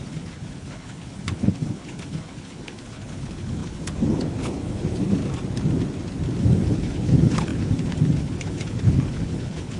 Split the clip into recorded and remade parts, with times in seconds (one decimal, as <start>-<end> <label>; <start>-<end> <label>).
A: 0.0-5.2 remade; 5.2-6.4 recorded; 6.4-9.8 remade